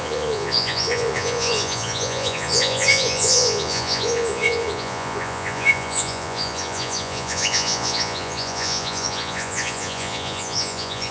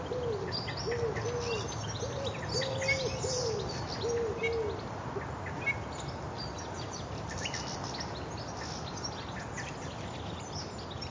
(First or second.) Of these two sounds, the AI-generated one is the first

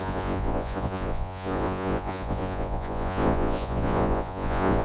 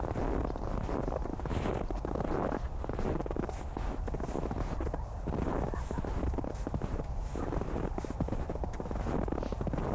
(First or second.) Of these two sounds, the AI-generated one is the first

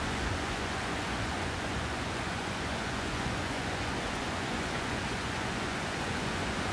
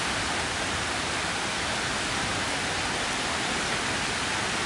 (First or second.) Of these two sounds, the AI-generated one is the first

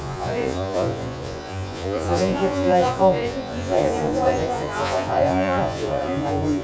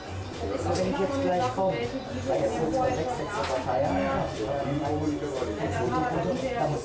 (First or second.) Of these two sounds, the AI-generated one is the first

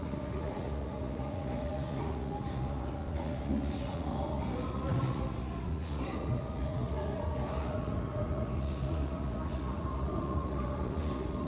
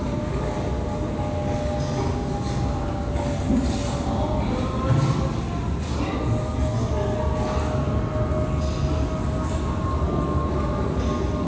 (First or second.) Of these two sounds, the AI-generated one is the first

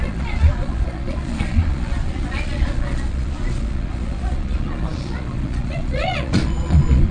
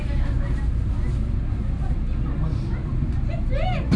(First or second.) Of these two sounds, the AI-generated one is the first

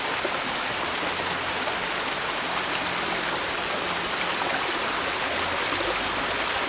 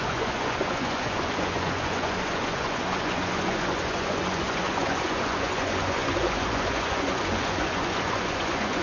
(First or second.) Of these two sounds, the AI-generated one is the second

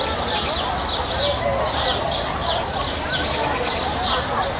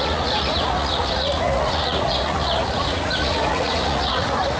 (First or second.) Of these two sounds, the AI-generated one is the second